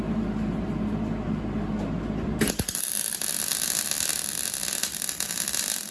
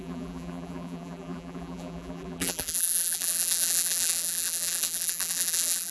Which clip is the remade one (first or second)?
second